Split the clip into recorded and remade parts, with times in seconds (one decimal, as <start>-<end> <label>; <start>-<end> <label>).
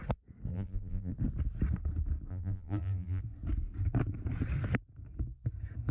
0.0-0.5 recorded; 0.5-1.1 remade; 1.1-2.3 recorded; 2.3-3.2 remade; 3.2-5.9 recorded